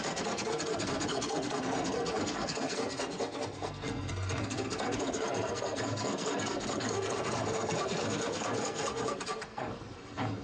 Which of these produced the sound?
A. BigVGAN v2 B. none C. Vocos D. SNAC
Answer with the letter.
D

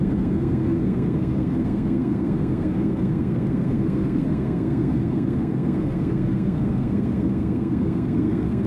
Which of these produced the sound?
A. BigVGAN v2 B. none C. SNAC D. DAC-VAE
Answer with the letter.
C